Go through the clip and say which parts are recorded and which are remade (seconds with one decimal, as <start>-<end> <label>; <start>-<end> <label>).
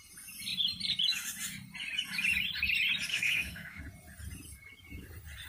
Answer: 0.0-3.1 recorded; 3.1-3.8 remade; 3.8-5.5 recorded